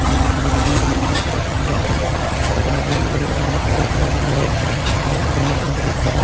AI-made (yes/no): yes